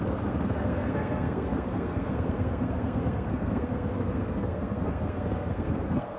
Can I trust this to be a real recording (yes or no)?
no